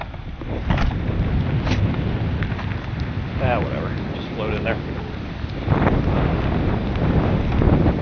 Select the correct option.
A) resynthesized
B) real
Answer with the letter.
B